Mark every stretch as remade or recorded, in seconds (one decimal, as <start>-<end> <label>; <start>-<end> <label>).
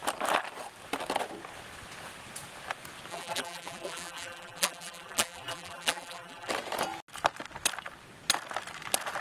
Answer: 0.0-3.1 recorded; 3.1-6.5 remade; 6.5-9.2 recorded